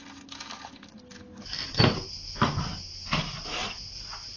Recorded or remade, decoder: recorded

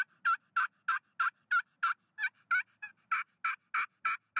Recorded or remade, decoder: recorded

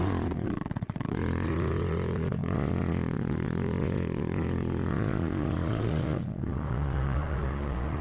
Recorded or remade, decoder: remade, vocoder, Vocos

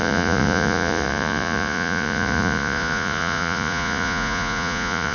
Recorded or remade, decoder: remade, vocoder, Vocos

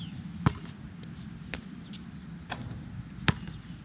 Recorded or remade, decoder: recorded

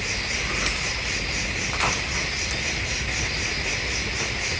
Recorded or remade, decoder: recorded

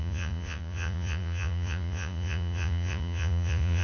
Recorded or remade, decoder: remade, vocoder, Vocos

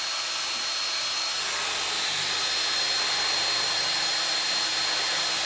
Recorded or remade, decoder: recorded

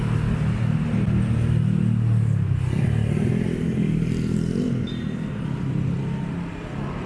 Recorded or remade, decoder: recorded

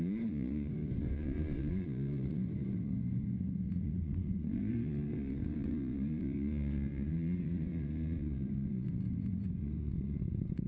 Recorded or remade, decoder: remade, vocoder, Vocos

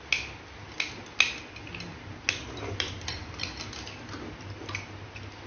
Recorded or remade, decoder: recorded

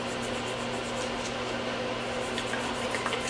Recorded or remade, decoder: recorded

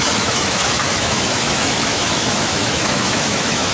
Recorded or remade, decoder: remade, autoencoder, DAC-VAE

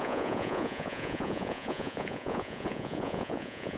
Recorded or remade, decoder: remade, vocoder, Vocos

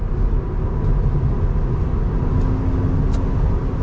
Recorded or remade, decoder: recorded